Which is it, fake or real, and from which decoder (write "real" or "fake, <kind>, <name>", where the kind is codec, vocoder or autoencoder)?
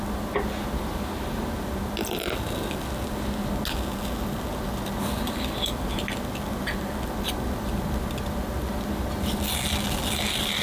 real